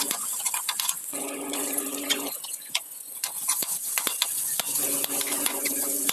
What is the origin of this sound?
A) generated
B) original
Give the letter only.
A